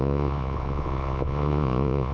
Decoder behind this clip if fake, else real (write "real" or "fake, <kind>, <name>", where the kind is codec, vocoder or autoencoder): fake, vocoder, Vocos